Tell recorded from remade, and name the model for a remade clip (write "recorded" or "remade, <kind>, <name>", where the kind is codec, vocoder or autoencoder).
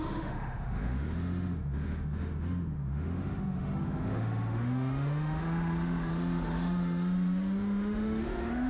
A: remade, autoencoder, DAC-VAE